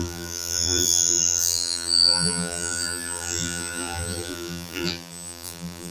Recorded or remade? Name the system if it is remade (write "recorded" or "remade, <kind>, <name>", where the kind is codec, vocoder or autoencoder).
remade, vocoder, BigVGAN v2